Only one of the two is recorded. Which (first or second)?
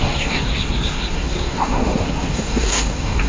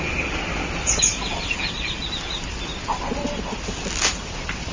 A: second